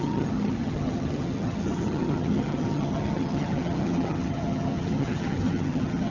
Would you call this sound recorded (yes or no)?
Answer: no